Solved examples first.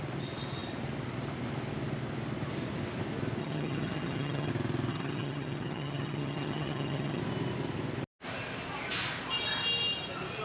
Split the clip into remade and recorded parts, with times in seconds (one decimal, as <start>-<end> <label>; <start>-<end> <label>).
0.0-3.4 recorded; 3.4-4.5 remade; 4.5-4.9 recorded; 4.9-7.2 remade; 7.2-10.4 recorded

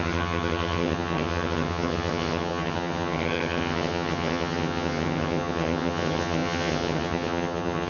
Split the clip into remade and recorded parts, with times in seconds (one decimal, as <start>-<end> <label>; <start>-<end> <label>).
0.0-7.9 remade

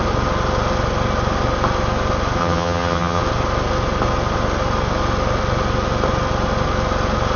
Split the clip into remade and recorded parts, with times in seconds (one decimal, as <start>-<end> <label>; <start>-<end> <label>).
0.0-2.4 recorded; 2.4-3.2 remade; 3.2-7.4 recorded

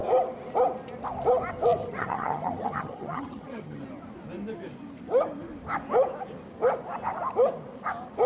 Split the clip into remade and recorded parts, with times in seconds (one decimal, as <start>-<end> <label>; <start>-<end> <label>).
0.0-1.8 recorded; 1.8-3.8 remade; 3.8-8.3 recorded

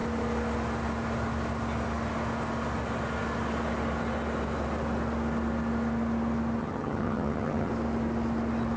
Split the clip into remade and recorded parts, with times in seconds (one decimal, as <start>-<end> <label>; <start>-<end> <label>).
0.0-6.6 recorded; 6.6-7.7 remade; 7.7-8.8 recorded

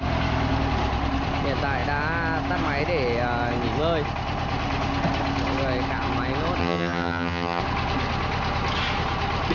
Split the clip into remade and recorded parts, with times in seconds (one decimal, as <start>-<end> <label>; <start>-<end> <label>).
0.0-6.6 recorded; 6.6-7.6 remade; 7.6-9.5 recorded

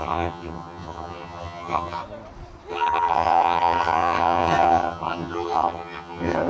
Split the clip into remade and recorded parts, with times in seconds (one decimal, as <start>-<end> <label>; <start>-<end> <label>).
0.0-2.0 remade; 2.0-2.7 recorded; 2.7-6.5 remade

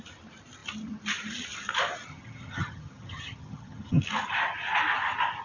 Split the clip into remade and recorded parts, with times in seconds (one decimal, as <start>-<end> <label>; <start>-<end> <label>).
0.0-2.1 recorded; 2.1-4.0 remade; 4.0-5.4 recorded